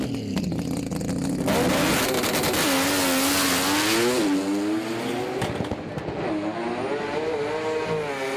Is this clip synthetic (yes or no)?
no